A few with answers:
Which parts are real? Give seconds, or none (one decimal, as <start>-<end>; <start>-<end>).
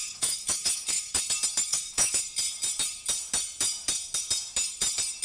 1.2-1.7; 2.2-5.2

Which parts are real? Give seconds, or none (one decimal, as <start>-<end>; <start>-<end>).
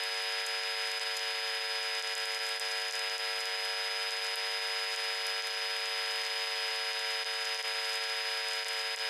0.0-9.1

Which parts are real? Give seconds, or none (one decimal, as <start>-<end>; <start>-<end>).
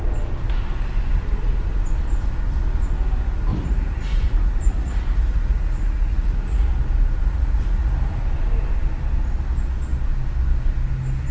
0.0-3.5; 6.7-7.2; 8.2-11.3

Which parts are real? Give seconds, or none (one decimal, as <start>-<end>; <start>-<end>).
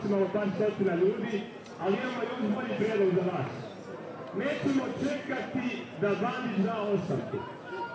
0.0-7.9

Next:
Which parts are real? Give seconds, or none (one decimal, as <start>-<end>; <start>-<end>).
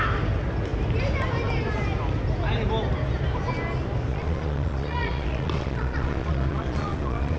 0.0-4.1